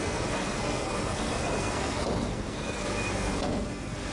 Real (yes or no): no